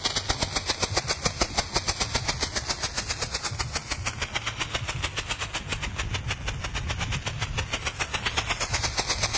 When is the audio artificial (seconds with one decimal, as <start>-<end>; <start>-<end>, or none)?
none